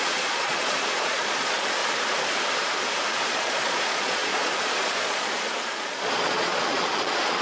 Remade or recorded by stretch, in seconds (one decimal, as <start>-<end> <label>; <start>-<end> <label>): 0.0-1.8 remade; 1.8-3.3 recorded; 3.3-7.4 remade